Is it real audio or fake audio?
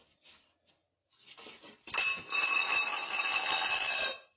real